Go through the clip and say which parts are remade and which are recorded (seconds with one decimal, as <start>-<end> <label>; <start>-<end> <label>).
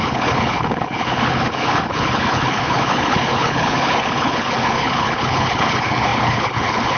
0.0-7.0 remade